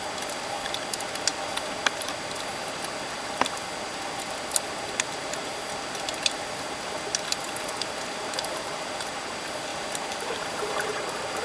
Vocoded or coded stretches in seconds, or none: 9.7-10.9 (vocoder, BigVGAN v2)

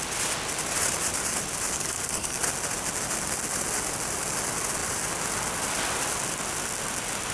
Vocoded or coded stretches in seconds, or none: 1.7-2.4 (codec, SNAC)

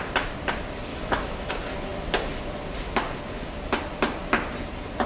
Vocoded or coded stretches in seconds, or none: 0.9-1.5 (autoencoder, DAC-VAE)

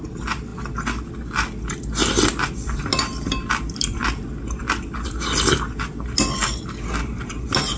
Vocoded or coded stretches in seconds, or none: none

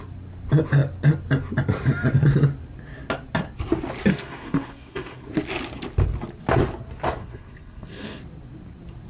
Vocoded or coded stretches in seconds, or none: 4.1-5.3 (codec, SNAC); 7.2-8.2

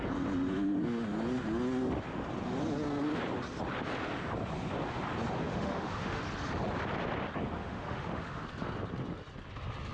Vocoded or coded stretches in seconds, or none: 5.5-6.2 (autoencoder, DAC-VAE); 7.6-8.4

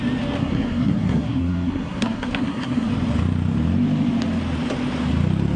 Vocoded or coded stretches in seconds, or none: 0.4-2.9 (codec, SNAC)